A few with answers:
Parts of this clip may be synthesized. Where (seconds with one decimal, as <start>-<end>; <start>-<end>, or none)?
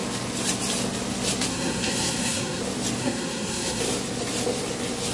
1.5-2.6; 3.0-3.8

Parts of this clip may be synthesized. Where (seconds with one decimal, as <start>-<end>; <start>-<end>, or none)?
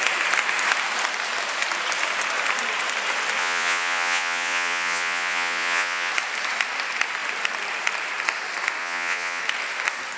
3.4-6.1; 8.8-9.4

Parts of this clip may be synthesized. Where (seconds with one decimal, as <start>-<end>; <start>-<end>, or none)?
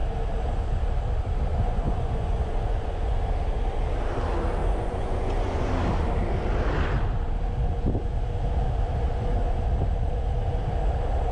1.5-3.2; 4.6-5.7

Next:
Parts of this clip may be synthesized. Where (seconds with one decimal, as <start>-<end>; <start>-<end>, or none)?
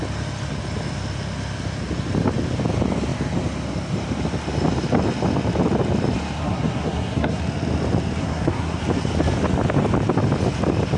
6.4-7.4; 8.2-8.8